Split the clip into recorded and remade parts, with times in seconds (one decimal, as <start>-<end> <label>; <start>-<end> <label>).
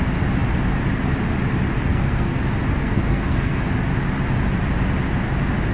0.0-1.9 recorded; 1.9-2.4 remade; 2.4-2.8 recorded; 2.8-3.6 remade; 3.6-5.7 recorded